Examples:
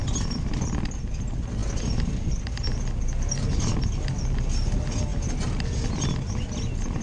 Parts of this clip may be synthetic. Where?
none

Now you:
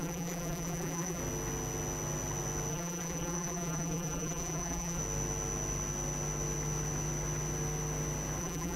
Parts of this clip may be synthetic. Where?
0.0-1.2 (vocoder, BigVGAN v2); 2.7-5.0; 8.4-8.8

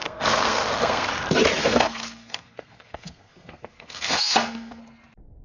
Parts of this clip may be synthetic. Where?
0.0-1.1 (codec, SNAC); 1.6-4.8

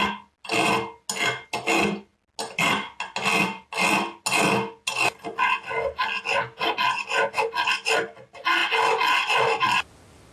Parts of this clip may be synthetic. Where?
none

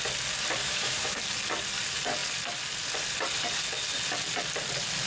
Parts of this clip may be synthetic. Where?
0.6-1.2 (autoencoder, DAC-VAE)

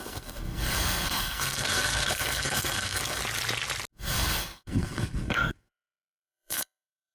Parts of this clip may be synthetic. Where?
0.0-3.2 (codec, SNAC); 3.9-7.1

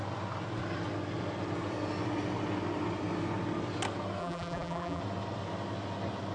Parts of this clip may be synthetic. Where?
4.2-5.0 (vocoder, BigVGAN v2)

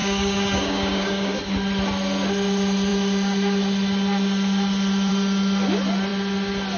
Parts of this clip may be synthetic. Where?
0.0-1.4 (codec, DAC)